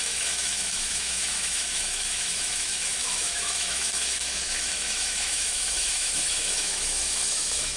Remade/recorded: remade